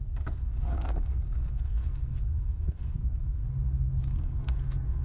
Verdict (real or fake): fake